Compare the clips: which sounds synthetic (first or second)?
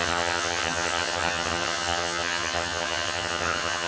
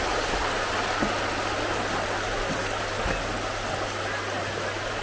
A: first